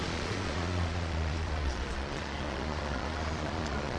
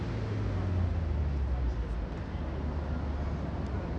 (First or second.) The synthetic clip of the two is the first